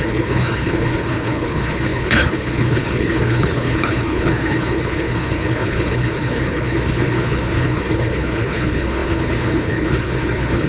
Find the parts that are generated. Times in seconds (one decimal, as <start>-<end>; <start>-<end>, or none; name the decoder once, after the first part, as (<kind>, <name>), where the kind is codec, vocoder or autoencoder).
0.0-10.7 (codec, HILCodec)